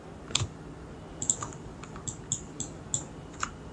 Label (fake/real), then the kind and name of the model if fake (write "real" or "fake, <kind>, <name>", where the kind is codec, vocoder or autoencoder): real